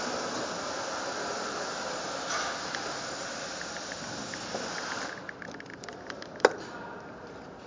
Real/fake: real